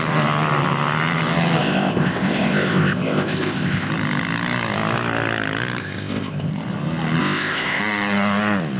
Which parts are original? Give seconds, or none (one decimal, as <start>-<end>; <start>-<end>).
0.0-1.6; 3.9-5.8; 6.5-7.2; 7.8-8.8